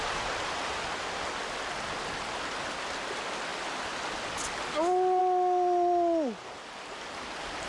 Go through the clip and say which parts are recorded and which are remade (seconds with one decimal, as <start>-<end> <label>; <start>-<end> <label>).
0.0-7.7 recorded